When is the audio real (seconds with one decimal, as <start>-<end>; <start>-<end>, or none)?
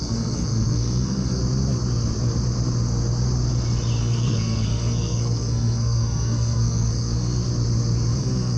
1.4-4.0; 7.4-8.2